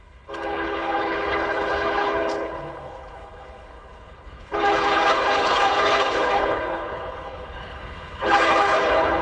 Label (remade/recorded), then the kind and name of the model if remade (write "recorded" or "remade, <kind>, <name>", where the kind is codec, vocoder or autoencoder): remade, codec, HILCodec